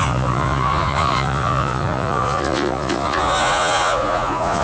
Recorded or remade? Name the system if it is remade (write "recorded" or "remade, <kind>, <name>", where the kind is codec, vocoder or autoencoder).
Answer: remade, vocoder, Vocos